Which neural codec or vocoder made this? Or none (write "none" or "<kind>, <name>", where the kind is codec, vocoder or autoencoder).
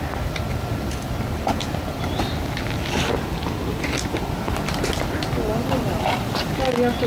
none